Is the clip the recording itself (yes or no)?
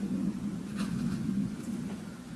no